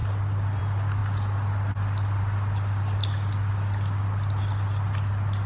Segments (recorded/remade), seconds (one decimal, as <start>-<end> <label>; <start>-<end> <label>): 0.0-5.5 recorded